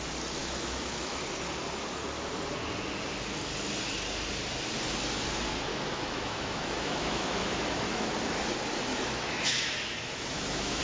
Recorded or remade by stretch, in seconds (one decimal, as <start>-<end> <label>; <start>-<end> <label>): 0.0-0.4 recorded; 0.4-1.2 remade; 1.2-5.7 recorded; 5.7-8.1 remade; 8.1-8.9 recorded; 8.9-10.8 remade